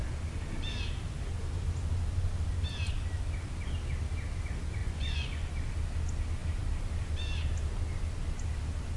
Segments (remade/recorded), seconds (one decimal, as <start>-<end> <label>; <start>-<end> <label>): 0.0-4.8 recorded; 4.8-5.5 remade; 5.5-9.0 recorded